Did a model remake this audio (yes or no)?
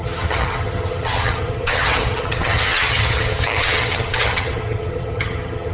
yes